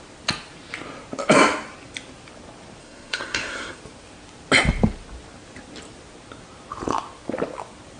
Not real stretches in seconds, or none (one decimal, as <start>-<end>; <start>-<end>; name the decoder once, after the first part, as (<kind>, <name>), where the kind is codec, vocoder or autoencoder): 2.8-3.8 (codec, SNAC)